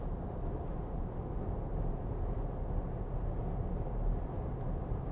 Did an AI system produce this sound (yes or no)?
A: no